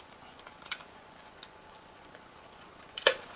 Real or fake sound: fake